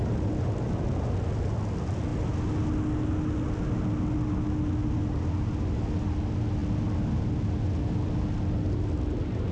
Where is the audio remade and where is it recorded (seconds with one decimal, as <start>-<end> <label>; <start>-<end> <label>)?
0.0-9.5 recorded